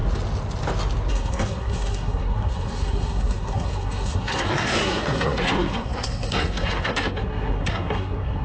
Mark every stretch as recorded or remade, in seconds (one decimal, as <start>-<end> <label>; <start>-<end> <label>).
0.0-1.1 recorded; 1.1-8.4 remade